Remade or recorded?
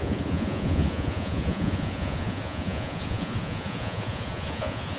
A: remade